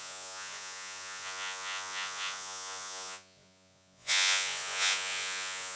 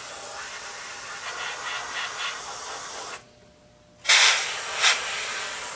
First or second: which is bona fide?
second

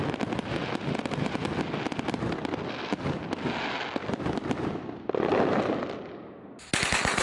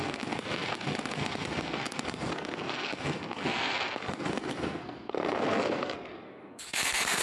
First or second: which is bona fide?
first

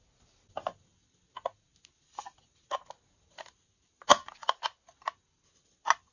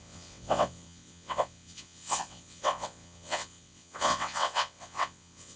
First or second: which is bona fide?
first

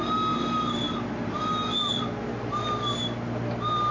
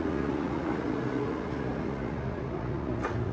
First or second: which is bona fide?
first